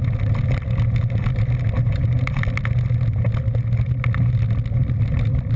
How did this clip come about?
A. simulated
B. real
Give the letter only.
B